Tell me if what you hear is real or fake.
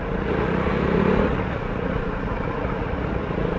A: fake